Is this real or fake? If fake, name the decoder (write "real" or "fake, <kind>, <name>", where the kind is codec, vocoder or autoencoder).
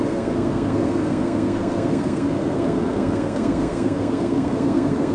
fake, codec, SNAC